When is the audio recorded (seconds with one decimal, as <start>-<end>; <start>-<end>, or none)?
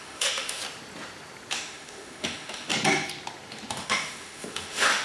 0.6-1.5; 2.7-3.7